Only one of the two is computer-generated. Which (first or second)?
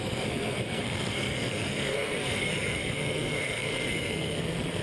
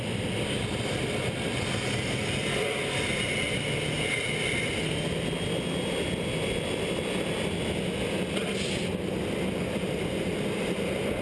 first